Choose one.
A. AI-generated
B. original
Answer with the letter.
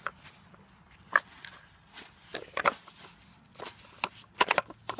B